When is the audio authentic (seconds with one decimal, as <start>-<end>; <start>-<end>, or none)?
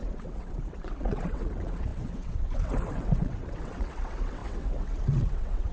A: none